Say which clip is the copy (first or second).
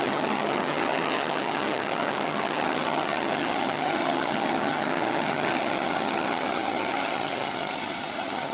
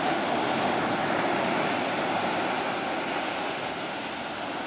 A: first